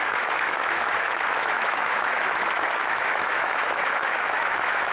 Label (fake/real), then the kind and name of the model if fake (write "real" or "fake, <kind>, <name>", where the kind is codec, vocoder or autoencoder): fake, autoencoder, DAC-VAE